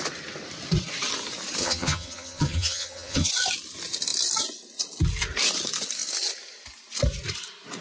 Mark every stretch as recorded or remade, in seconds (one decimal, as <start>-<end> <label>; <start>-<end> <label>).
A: 0.0-1.6 recorded; 1.6-3.3 remade; 3.3-7.8 recorded